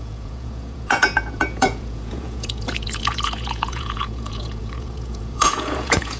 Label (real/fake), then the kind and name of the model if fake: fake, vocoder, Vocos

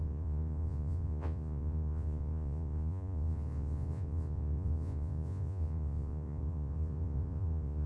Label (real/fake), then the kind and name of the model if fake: fake, vocoder, Vocos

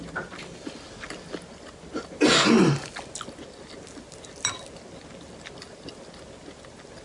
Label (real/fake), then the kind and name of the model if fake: real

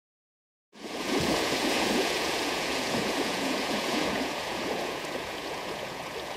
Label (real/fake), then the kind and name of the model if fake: fake, vocoder, Vocos